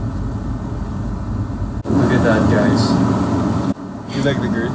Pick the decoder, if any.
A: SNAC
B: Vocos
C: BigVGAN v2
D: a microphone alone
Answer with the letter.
D